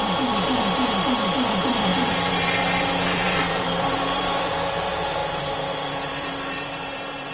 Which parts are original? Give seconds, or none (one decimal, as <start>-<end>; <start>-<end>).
none